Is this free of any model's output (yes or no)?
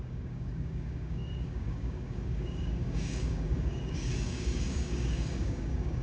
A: no